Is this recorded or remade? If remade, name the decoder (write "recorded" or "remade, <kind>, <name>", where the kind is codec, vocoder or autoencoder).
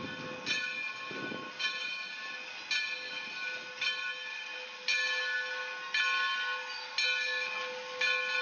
recorded